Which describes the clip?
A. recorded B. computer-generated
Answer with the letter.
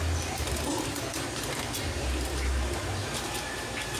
A